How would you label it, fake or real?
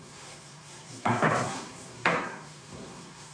fake